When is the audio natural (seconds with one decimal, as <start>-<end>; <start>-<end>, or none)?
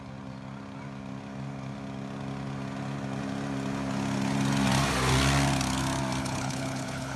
0.0-6.2